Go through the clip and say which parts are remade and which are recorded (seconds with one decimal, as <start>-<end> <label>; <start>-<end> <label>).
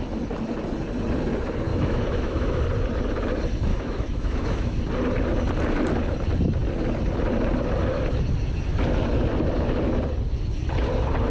0.0-1.7 recorded; 1.7-2.6 remade; 2.6-3.7 recorded; 3.7-4.8 remade; 4.8-11.3 recorded